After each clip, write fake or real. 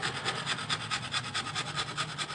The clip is real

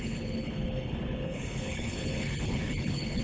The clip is fake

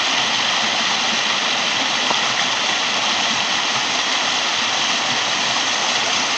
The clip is real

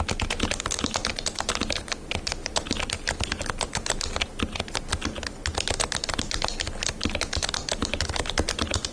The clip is real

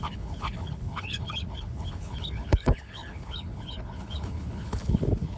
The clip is fake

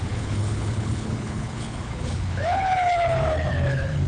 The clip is fake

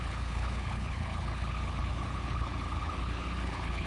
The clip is fake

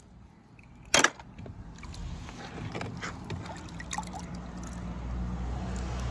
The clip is real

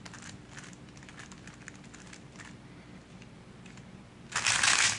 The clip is real